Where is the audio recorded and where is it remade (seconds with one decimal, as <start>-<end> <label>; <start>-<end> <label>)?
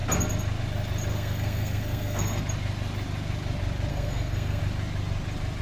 0.0-1.1 recorded; 1.1-2.4 remade; 2.4-3.9 recorded; 3.9-4.6 remade; 4.6-5.6 recorded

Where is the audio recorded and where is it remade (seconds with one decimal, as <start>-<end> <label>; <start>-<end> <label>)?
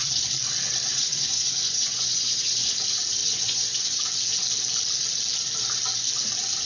0.0-0.9 recorded; 0.9-2.7 remade; 2.7-3.2 recorded; 3.2-4.0 remade; 4.0-6.6 recorded